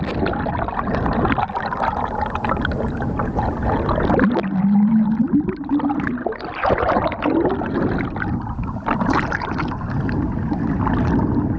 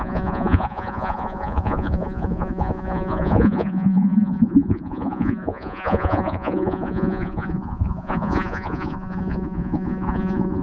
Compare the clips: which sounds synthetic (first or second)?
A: second